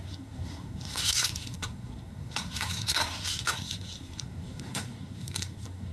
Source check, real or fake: fake